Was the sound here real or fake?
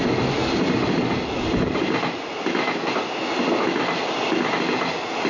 real